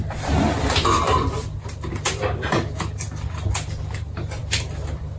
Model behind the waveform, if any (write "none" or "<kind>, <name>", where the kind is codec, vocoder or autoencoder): vocoder, BigVGAN v2